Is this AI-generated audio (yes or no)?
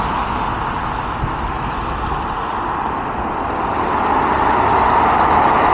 no